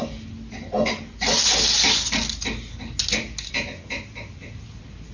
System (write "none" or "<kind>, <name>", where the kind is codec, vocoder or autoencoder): none